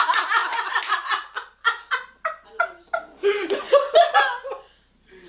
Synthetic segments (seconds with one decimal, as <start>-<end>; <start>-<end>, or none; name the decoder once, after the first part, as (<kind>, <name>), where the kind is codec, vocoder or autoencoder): none